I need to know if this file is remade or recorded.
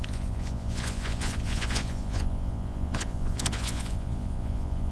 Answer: remade